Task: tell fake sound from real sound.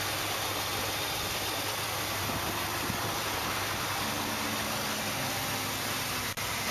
real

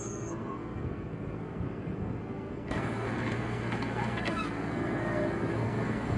fake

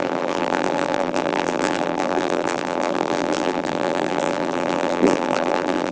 fake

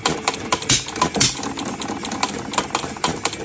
real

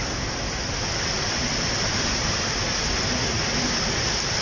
real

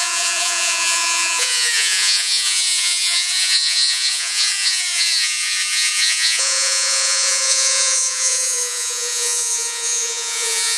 fake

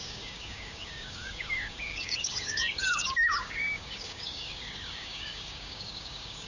fake